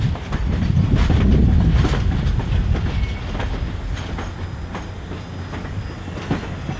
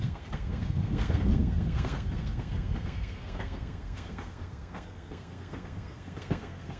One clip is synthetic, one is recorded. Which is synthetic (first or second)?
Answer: second